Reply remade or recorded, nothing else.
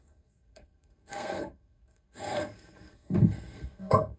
remade